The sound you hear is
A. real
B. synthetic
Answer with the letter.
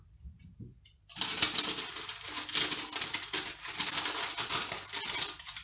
A